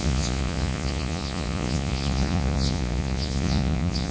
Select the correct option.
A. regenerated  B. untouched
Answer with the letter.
A